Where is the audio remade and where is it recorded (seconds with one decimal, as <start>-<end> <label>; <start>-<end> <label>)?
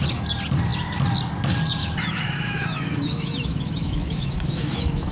0.0-1.8 recorded; 1.8-5.1 remade